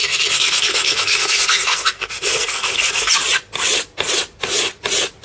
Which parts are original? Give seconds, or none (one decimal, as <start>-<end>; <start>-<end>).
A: 3.1-5.2